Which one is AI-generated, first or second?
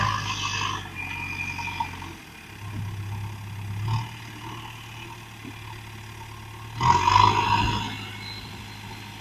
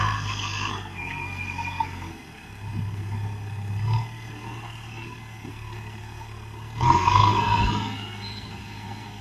second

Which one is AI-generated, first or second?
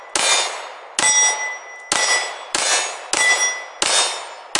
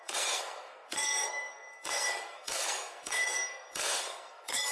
second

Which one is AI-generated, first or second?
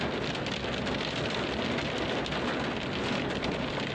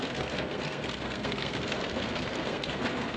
second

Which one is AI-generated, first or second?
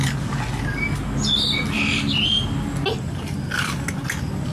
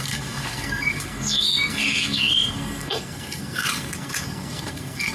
second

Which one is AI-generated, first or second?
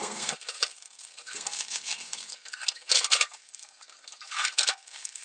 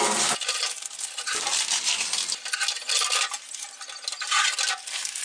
first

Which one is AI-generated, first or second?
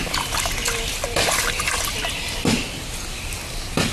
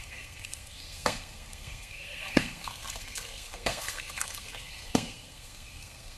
second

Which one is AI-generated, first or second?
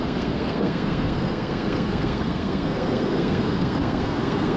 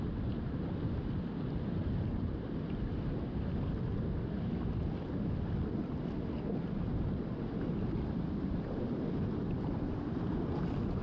first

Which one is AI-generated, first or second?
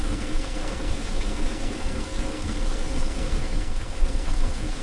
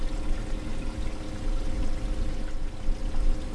first